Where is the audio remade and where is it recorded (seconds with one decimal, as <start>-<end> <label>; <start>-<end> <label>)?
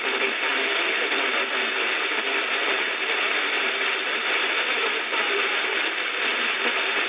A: 0.0-7.1 recorded